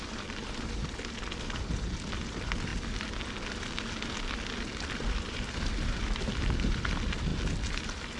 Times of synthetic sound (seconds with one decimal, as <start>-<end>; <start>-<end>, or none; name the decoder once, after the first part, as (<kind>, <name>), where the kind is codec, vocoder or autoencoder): 0.0-2.7 (vocoder, BigVGAN v2); 4.8-7.3